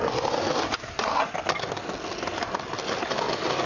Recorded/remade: recorded